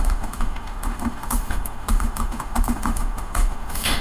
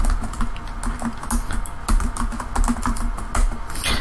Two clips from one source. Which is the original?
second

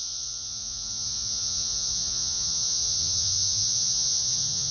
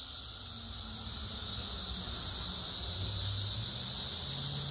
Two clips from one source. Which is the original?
second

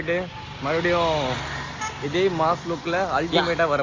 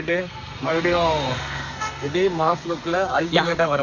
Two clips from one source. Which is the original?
first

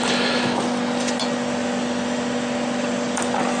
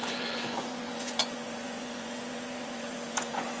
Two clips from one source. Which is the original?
first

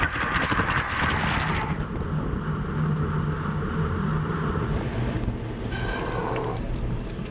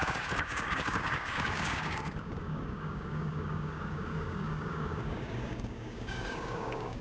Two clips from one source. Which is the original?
first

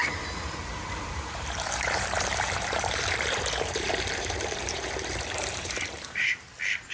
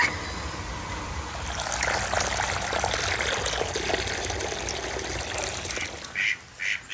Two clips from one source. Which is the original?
second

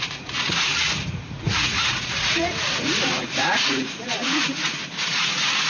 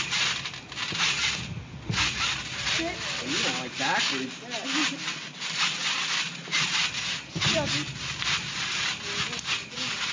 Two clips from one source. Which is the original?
second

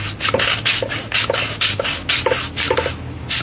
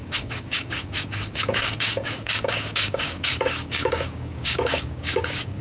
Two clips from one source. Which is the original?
first